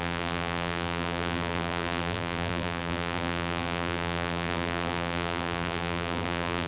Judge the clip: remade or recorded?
remade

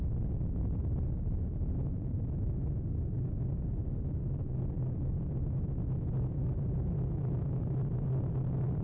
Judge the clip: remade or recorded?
recorded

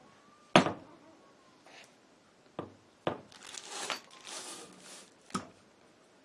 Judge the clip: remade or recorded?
recorded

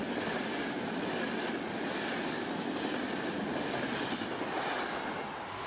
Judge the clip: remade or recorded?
recorded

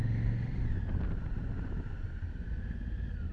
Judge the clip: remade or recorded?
recorded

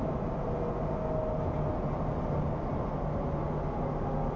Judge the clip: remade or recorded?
recorded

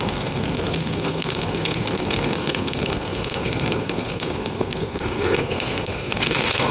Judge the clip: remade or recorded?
remade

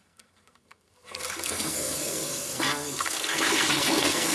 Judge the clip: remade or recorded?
remade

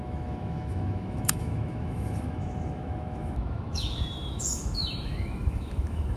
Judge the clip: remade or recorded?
remade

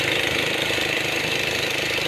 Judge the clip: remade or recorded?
recorded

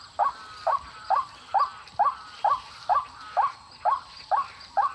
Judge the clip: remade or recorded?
recorded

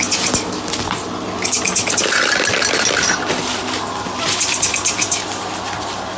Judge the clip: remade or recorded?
recorded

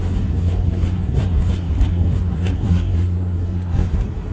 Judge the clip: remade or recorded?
remade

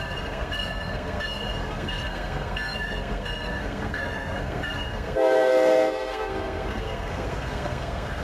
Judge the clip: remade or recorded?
remade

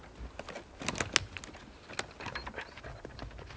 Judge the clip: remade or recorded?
recorded